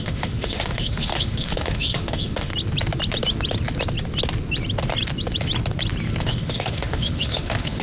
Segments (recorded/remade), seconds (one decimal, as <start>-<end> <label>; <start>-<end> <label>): 0.0-2.5 remade; 2.5-6.2 recorded; 6.2-7.8 remade